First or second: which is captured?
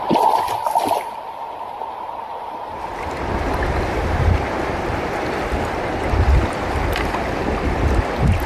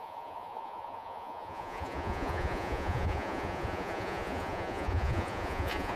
first